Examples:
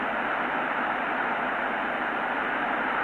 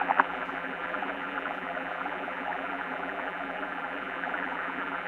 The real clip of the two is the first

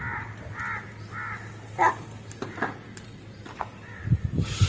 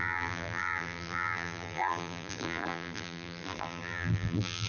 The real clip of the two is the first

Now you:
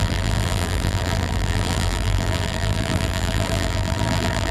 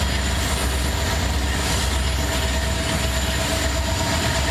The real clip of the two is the second